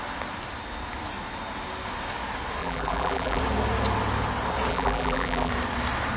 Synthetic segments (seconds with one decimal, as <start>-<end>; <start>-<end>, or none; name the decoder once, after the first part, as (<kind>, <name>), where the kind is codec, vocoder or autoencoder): 2.6-3.4 (vocoder, BigVGAN v2); 4.7-5.5